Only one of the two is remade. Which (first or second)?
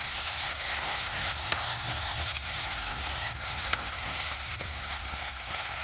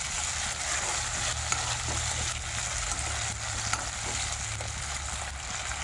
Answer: first